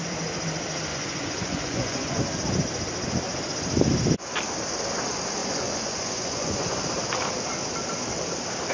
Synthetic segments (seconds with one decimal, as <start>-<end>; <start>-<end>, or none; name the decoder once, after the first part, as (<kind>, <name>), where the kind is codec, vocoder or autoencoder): 0.9-2.2 (vocoder, Vocos); 5.4-6.8